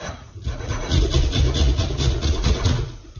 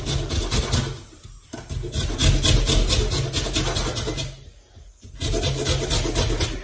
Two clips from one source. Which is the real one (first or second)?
second